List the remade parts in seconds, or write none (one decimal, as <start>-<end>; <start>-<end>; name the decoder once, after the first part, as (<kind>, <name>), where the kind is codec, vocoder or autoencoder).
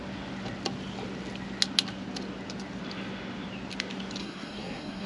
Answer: 4.2-5.1 (codec, SNAC)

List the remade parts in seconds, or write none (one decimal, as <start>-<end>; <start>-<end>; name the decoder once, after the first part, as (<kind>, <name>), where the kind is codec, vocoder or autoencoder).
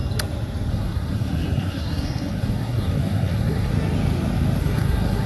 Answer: 0.7-3.7 (codec, SNAC); 4.6-5.3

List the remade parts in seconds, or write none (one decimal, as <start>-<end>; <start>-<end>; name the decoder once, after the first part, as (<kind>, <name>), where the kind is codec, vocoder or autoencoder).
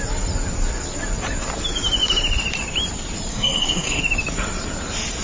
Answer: 3.3-4.0 (codec, SNAC)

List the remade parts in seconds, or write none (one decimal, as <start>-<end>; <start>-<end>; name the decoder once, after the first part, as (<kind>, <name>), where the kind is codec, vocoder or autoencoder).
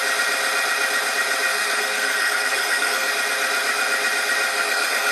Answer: 1.5-3.1 (codec, SNAC); 4.5-5.1